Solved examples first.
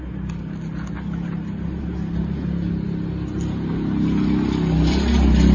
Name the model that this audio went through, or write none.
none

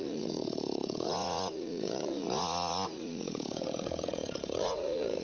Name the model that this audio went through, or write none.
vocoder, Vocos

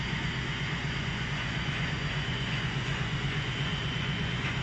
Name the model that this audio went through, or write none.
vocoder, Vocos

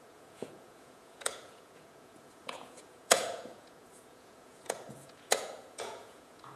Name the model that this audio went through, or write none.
vocoder, Vocos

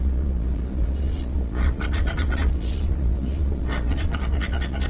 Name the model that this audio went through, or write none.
vocoder, Vocos